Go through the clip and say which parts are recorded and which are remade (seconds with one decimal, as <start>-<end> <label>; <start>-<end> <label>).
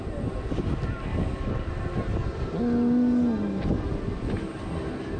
0.0-1.1 recorded; 1.1-1.7 remade; 1.7-5.2 recorded